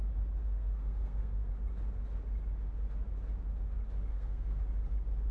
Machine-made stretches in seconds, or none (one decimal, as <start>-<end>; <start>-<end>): 0.4-1.5; 4.1-4.6